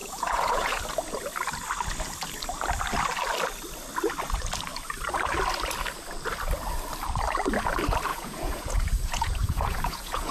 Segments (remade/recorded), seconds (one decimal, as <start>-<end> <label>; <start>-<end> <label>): 0.0-0.8 remade; 0.8-8.1 recorded; 8.1-10.3 remade